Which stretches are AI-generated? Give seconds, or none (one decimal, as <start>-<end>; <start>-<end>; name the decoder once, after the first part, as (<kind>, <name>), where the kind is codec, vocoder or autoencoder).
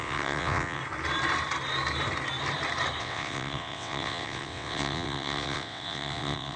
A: 0.0-0.8 (vocoder, WaveNeXt); 3.0-6.6